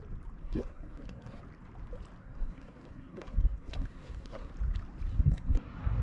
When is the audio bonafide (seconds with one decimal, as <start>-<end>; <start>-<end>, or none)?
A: 0.0-0.4; 1.4-2.2; 4.5-5.1